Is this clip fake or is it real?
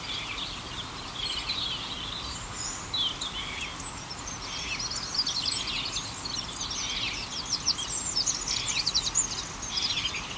real